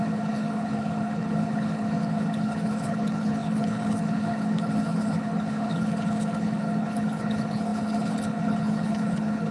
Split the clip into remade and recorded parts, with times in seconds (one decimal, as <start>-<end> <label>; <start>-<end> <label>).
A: 0.0-9.5 remade